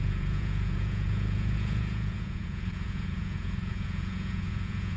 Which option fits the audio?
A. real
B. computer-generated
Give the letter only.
B